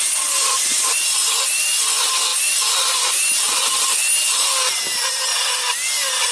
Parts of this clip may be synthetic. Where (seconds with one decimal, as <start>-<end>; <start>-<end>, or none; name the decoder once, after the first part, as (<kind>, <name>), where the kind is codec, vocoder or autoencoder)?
none